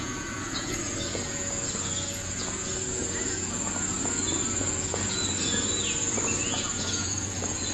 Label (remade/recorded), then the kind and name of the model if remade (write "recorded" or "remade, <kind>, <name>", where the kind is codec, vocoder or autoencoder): remade, vocoder, Vocos